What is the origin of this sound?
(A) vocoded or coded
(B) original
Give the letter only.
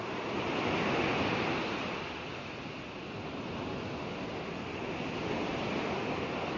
B